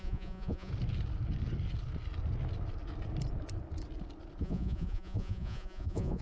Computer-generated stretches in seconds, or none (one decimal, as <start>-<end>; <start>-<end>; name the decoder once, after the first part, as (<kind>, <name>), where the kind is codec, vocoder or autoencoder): 0.0-0.7 (vocoder, Vocos); 4.4-6.2